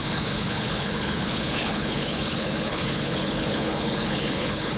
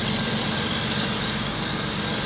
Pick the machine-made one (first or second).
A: first